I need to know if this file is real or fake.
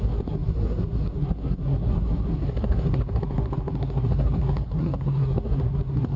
fake